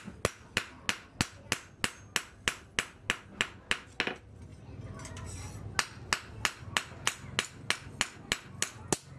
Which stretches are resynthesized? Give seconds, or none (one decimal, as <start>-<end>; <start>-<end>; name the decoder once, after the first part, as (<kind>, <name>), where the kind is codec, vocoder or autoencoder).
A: none